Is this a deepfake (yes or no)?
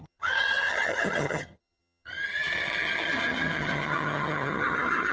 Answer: yes